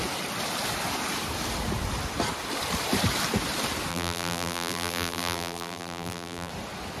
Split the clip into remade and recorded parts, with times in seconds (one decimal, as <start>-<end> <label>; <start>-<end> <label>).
0.0-3.9 recorded; 3.9-6.5 remade; 6.5-7.0 recorded